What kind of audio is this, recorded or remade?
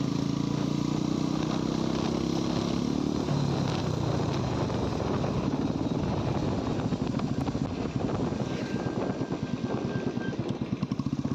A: recorded